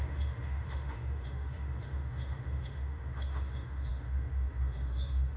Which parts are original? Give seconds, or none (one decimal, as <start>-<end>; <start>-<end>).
none